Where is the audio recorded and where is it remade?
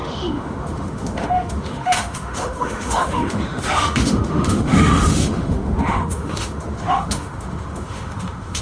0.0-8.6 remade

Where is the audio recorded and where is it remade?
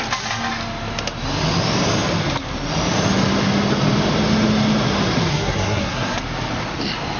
0.0-5.3 recorded; 5.3-6.2 remade; 6.2-7.2 recorded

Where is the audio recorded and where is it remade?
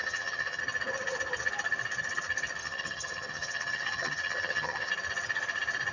0.0-0.6 remade; 0.6-2.6 recorded; 2.6-4.9 remade; 4.9-5.9 recorded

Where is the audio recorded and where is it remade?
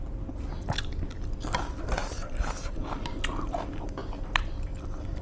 0.0-5.2 recorded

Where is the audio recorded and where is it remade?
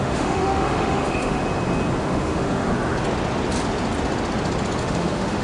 0.0-1.4 remade; 1.4-2.0 recorded; 2.0-2.7 remade; 2.7-4.8 recorded; 4.8-5.4 remade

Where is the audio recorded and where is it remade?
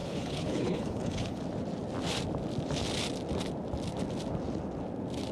0.0-1.4 remade; 1.4-5.3 recorded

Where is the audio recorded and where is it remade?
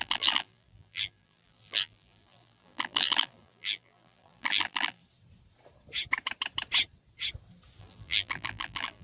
0.0-5.0 remade; 5.0-7.8 recorded; 7.8-9.0 remade